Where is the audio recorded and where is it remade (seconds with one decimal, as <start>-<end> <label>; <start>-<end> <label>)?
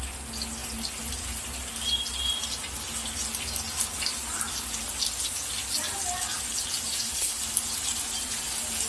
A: 0.0-6.9 recorded; 6.9-7.4 remade; 7.4-8.9 recorded